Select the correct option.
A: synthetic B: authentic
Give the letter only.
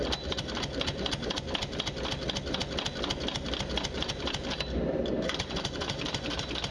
B